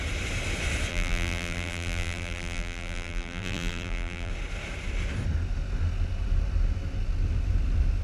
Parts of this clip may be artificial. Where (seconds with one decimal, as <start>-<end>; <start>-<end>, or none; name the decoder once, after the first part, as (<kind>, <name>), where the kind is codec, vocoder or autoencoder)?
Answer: 0.9-4.3 (vocoder, BigVGAN v2)